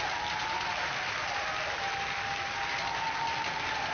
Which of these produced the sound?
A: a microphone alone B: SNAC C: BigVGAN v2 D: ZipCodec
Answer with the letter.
A